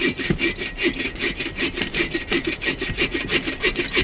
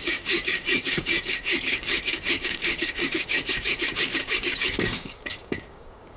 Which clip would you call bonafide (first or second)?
first